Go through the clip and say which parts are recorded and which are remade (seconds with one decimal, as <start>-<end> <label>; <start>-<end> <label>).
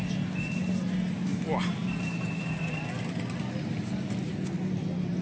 0.0-5.2 recorded